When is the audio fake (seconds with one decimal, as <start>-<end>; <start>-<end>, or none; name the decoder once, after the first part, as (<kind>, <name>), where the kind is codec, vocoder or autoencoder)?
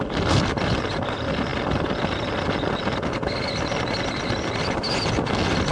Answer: none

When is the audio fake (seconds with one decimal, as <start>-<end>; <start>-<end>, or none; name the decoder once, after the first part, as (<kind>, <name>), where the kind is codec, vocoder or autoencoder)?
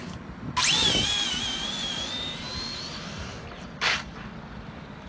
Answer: none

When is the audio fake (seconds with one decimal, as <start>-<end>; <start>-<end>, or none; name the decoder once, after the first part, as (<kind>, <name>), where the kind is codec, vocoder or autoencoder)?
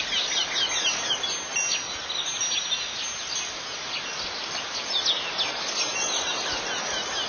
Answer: none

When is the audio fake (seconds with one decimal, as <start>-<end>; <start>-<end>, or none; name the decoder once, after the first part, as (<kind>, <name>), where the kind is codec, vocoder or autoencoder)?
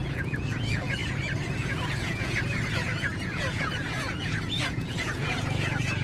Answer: 0.0-6.0 (vocoder, Vocos)